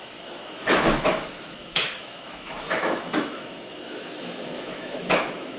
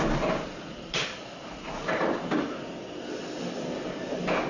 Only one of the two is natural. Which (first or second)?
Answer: second